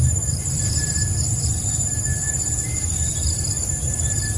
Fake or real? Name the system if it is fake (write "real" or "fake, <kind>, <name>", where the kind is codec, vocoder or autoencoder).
real